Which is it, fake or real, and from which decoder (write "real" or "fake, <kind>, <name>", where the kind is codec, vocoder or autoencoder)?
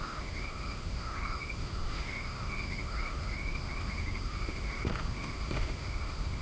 fake, autoencoder, DAC-VAE